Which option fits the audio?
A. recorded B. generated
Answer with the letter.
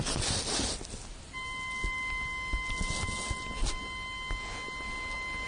A